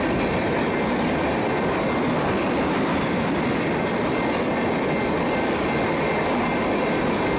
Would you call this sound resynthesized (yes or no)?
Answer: no